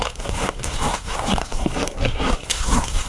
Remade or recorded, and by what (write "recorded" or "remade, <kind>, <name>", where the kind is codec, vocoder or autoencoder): remade, codec, SNAC